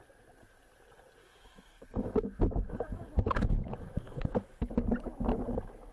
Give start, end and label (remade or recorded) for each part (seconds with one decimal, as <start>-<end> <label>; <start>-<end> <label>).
0.0-1.2 recorded; 1.2-4.7 remade; 4.7-5.9 recorded